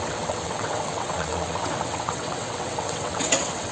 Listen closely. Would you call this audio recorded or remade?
remade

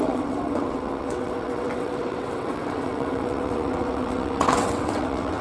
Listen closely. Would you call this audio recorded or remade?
remade